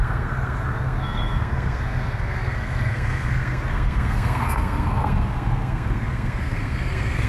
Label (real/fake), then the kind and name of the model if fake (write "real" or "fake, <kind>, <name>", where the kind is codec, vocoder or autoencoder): fake, codec, SNAC